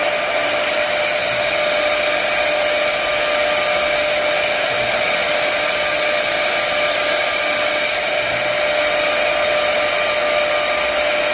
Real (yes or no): yes